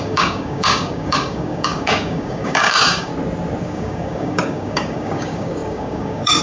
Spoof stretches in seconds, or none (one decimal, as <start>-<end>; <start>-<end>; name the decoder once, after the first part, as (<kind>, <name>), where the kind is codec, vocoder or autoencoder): 0.0-3.1 (codec, DAC); 3.6-6.4